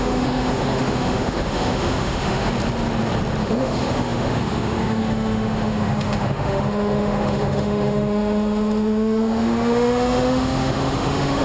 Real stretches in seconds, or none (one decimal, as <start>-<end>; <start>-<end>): 2.5-3.4

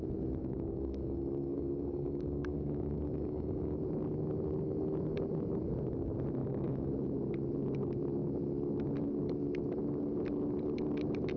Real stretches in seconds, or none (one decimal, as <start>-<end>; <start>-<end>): 0.0-0.4; 3.8-6.4; 6.9-11.4